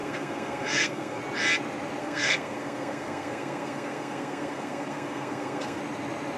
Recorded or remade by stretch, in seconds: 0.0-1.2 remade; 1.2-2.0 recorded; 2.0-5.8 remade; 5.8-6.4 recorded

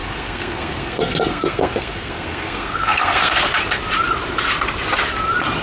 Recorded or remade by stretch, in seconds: 0.0-3.4 remade; 3.4-5.6 recorded

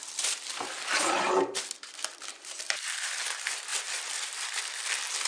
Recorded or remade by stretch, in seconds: 0.0-3.2 remade; 3.2-3.7 recorded; 3.7-4.6 remade; 4.6-5.3 recorded

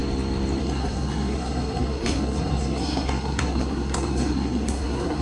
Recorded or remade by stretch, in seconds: 0.0-0.6 recorded; 0.6-5.2 remade

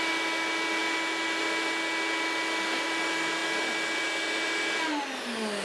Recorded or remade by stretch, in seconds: 0.0-5.6 recorded

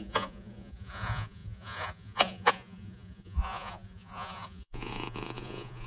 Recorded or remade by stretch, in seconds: 0.0-5.9 remade

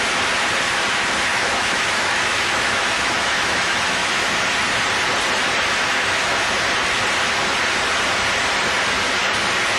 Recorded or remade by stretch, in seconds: 0.0-1.3 recorded; 1.3-4.3 remade; 4.3-9.8 recorded